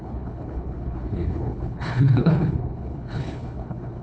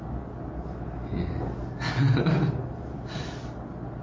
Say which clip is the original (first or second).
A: second